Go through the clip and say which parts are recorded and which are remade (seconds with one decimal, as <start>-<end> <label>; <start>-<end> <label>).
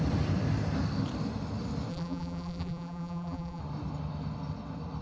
0.0-1.9 recorded; 1.9-3.6 remade; 3.6-5.0 recorded